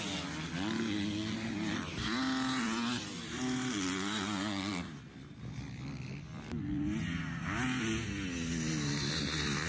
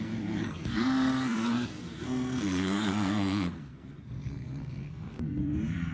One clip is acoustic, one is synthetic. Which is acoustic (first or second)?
first